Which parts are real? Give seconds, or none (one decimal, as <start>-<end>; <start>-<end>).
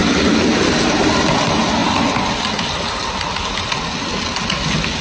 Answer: 0.0-5.0